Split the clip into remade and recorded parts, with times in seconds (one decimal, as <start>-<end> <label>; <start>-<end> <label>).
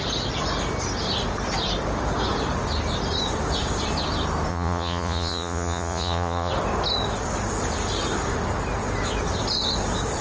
0.0-4.5 recorded; 4.5-6.5 remade; 6.5-10.2 recorded